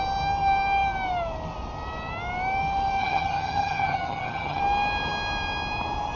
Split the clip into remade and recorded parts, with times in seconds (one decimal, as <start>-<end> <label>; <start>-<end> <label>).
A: 0.0-3.0 recorded; 3.0-4.6 remade; 4.6-6.2 recorded